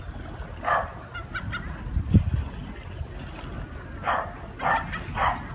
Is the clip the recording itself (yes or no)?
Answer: yes